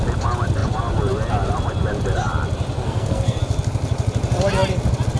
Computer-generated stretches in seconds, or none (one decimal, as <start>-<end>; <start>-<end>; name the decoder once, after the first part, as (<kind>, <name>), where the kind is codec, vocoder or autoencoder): 2.8-3.4 (codec, SNAC)